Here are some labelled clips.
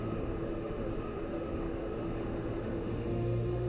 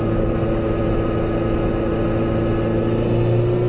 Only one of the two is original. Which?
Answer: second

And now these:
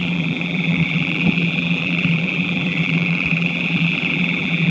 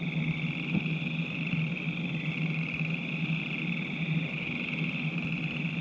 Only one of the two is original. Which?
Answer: second